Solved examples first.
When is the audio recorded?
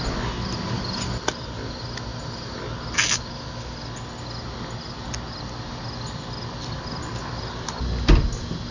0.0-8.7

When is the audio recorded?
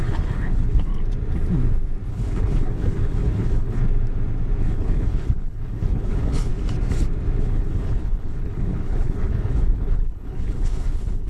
0.9-2.1; 3.8-4.6; 6.5-7.4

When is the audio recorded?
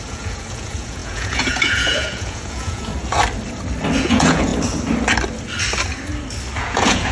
2.9-4.0; 4.5-6.6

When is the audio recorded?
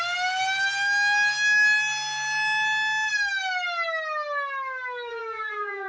0.0-5.1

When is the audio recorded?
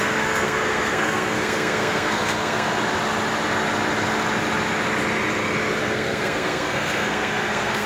2.7-5.8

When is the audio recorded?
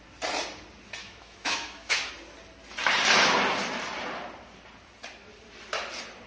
0.0-1.0; 2.1-6.3